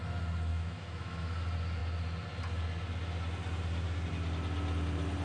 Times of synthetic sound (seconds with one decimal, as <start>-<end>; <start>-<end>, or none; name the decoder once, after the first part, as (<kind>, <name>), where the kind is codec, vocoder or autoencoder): 0.5-1.4 (autoencoder, DAC-VAE)